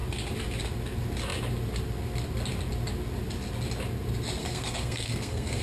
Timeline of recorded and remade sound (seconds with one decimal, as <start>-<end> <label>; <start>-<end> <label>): 0.0-4.4 recorded; 4.4-5.6 remade